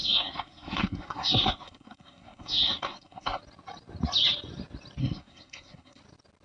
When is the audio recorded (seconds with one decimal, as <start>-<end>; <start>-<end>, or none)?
3.4-5.0; 6.0-6.4